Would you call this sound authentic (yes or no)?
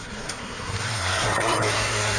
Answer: no